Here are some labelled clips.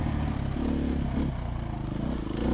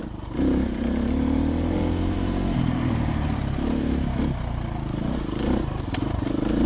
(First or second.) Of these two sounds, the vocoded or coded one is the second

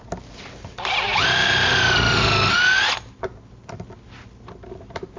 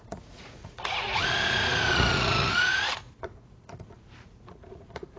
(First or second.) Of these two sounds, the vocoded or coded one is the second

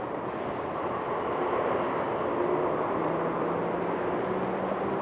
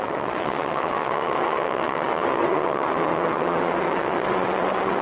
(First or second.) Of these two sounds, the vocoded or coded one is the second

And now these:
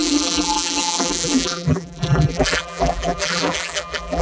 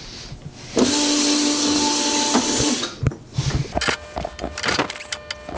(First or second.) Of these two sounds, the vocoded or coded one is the first